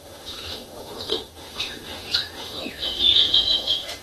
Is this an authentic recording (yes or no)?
no